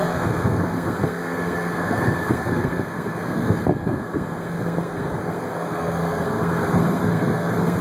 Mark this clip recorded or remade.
remade